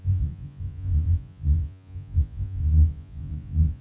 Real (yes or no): no